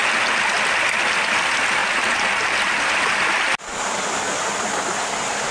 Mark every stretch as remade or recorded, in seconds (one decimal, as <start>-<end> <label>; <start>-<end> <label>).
0.0-5.5 recorded